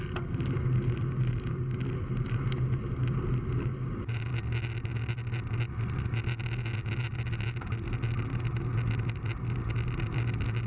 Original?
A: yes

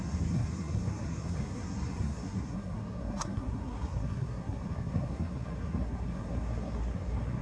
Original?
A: no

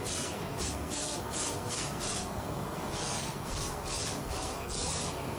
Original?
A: no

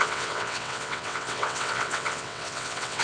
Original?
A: no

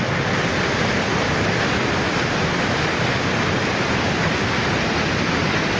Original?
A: yes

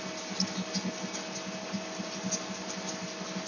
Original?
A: yes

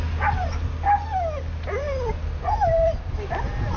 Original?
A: yes